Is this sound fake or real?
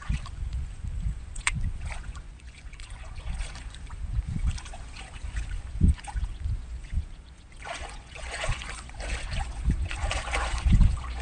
fake